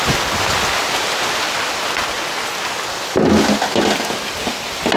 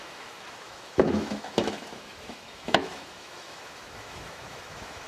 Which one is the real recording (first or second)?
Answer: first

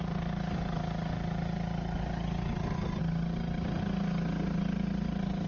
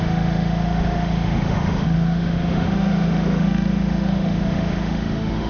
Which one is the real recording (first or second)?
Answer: first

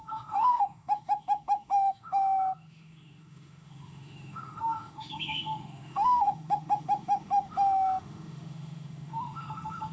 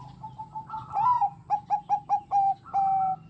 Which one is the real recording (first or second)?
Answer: second